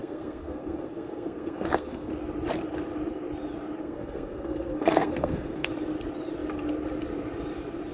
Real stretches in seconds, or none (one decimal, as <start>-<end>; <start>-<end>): 2.1-3.8; 5.7-7.9